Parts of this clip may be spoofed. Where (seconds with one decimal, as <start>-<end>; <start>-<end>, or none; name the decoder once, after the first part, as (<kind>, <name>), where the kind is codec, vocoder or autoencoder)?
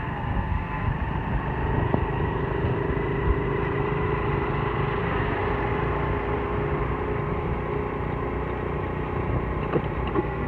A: 0.0-0.9 (codec, SNAC); 5.0-5.4; 10.1-10.5